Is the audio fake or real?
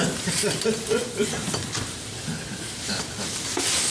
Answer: real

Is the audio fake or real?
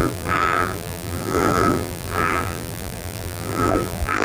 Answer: fake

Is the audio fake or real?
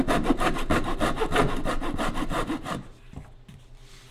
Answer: real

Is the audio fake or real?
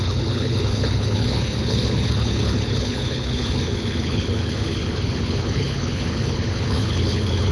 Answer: fake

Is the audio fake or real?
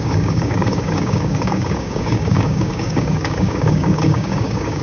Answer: fake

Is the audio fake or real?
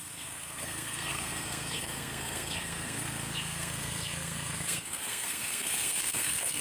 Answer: fake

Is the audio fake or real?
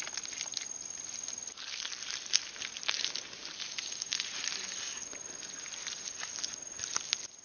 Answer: real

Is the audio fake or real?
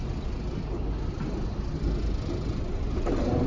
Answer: real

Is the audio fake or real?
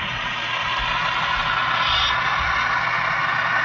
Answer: real